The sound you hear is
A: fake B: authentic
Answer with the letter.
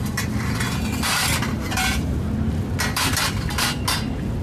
B